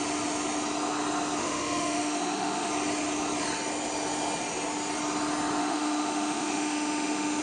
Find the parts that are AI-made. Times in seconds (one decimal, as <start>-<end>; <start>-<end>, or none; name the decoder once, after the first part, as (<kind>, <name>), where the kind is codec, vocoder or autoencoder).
1.4-2.7 (autoencoder, DAC-VAE); 5.6-7.4